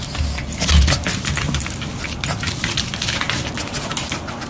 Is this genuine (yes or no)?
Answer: yes